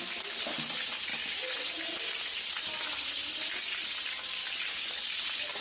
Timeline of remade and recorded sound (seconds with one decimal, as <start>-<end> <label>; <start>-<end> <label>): 0.0-3.2 recorded; 3.2-3.9 remade; 3.9-5.6 recorded